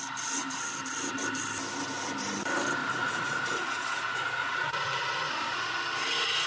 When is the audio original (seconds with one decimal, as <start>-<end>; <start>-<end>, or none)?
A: 0.0-2.8; 5.8-6.5